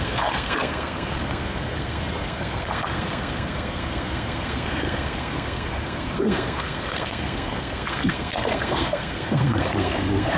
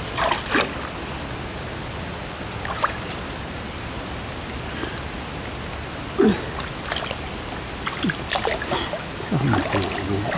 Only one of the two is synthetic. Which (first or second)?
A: first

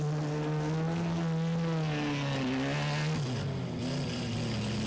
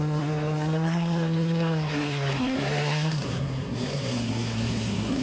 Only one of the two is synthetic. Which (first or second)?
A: second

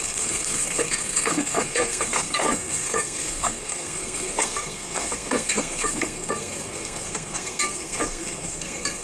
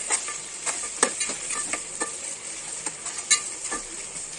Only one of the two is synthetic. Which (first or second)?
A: first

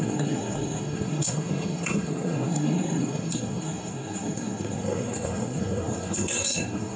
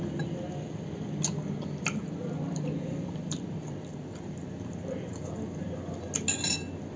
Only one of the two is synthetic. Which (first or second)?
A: first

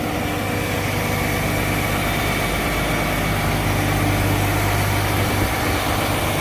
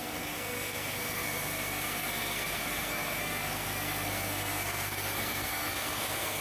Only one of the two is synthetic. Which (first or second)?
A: second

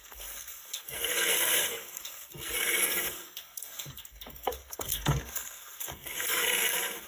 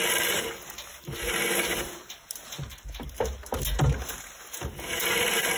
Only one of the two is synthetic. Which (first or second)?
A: first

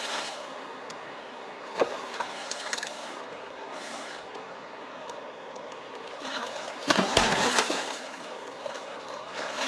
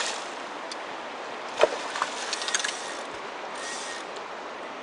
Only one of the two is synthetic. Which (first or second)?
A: first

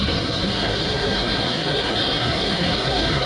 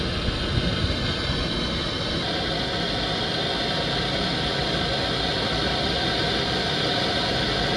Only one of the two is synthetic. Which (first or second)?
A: first